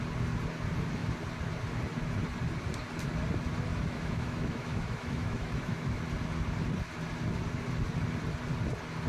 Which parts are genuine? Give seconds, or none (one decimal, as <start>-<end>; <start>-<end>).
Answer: 0.0-3.7; 6.0-9.1